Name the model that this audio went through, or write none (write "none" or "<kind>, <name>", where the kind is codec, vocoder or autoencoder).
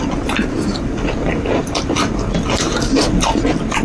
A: none